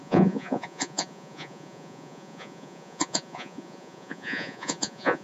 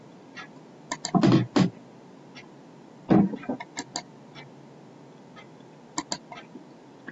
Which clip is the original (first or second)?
second